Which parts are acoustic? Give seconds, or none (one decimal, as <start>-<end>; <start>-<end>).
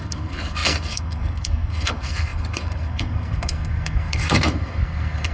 none